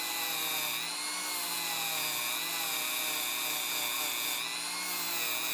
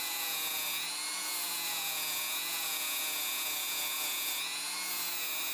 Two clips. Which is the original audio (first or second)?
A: first